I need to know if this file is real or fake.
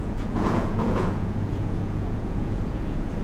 fake